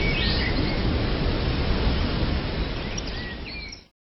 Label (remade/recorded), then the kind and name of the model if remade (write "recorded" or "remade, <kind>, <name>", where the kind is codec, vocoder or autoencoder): recorded